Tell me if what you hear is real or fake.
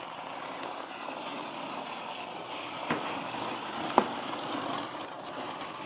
real